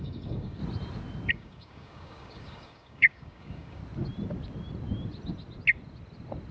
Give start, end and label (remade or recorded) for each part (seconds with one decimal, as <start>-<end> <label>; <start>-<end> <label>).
0.0-0.6 remade; 0.6-1.3 recorded; 1.3-3.8 remade; 3.8-6.5 recorded